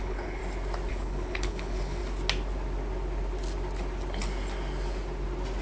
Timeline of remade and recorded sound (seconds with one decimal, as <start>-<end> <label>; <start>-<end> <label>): 0.0-0.4 remade; 0.4-0.9 recorded; 0.9-2.0 remade; 2.0-5.6 recorded